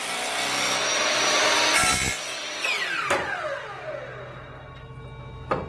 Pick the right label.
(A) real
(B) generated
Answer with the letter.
A